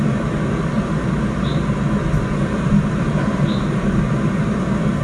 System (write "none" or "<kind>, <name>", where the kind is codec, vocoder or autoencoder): vocoder, BigVGAN v2